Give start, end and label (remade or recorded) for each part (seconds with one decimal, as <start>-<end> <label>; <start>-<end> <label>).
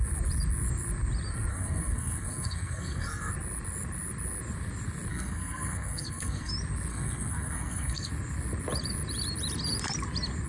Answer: 0.0-1.5 recorded; 1.5-3.3 remade; 3.3-5.1 recorded; 5.1-6.5 remade; 6.5-6.9 recorded; 6.9-8.1 remade; 8.1-10.5 recorded